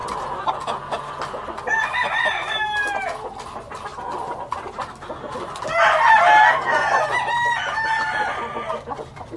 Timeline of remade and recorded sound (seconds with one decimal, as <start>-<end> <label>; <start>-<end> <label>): 0.0-9.4 recorded